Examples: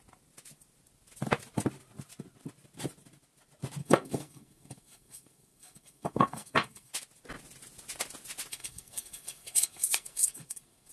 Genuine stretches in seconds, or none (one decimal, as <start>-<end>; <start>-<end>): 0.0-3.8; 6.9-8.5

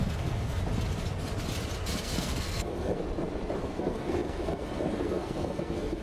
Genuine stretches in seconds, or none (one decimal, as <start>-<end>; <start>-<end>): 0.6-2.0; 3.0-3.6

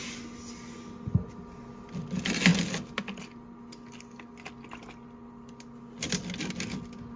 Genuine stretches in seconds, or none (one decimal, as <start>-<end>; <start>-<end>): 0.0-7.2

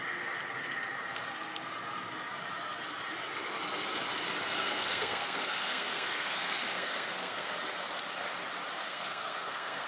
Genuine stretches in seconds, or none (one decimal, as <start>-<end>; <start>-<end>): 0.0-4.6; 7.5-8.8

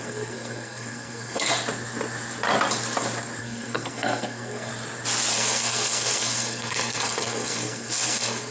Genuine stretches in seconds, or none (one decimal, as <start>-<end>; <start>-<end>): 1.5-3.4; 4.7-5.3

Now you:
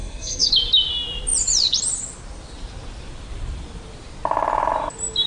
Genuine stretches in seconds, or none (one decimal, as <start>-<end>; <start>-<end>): 0.5-5.3

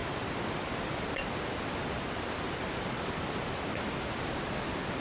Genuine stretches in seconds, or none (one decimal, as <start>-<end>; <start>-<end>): 0.0-5.0

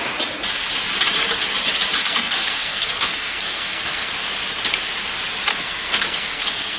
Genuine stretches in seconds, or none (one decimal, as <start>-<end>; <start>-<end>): 0.0-2.0; 4.1-5.5